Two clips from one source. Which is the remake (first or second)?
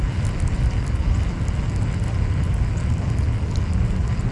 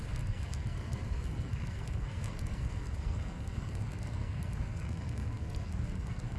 second